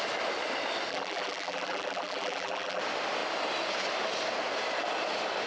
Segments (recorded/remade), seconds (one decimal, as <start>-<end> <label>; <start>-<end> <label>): 0.0-0.9 recorded; 0.9-2.8 remade; 2.8-5.5 recorded